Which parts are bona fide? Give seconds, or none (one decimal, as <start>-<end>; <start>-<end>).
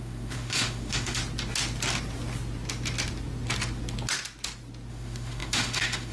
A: 1.2-4.9